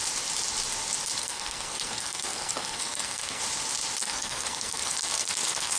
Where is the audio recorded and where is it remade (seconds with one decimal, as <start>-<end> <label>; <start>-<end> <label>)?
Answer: 0.0-1.2 recorded; 1.2-3.4 remade; 3.4-4.0 recorded; 4.0-5.8 remade